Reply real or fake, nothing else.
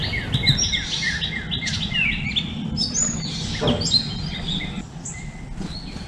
real